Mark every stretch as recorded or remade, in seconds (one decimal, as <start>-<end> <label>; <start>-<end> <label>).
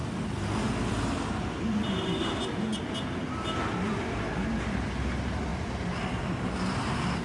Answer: 0.0-7.2 recorded